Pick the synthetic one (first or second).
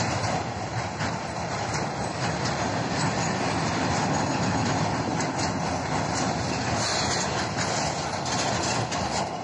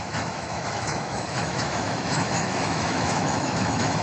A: second